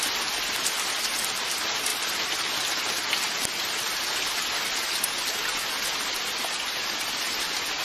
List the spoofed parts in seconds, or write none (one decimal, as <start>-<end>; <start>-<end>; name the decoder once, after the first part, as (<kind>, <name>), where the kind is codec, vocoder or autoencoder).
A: 1.9-2.5 (vocoder, BigVGAN v2)